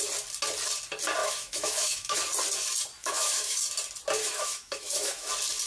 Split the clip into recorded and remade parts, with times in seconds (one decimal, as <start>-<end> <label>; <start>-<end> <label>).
0.0-1.2 recorded; 1.2-2.2 remade; 2.2-3.0 recorded; 3.0-3.6 remade; 3.6-4.2 recorded; 4.2-5.3 remade; 5.3-5.7 recorded